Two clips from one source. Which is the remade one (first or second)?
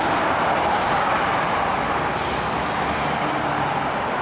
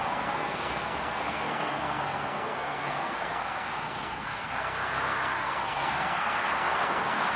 second